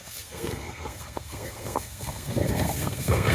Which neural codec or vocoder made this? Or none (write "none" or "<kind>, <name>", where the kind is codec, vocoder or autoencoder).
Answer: codec, SNAC